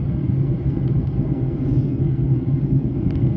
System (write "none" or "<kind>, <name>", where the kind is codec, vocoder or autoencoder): codec, SNAC